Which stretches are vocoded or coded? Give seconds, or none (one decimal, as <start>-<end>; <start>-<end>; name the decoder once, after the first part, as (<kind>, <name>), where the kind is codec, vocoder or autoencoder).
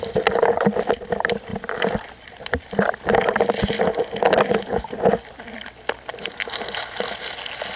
1.5-3.2 (vocoder, BigVGAN v2); 6.3-7.2